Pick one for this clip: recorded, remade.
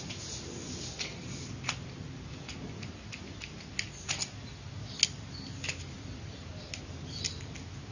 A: recorded